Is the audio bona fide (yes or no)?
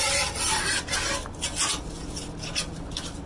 yes